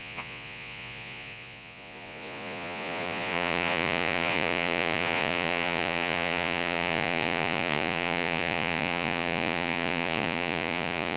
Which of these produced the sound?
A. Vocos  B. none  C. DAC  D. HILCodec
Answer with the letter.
A